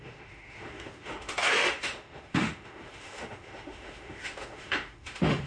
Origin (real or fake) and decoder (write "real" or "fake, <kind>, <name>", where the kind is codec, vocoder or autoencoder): fake, autoencoder, DAC-VAE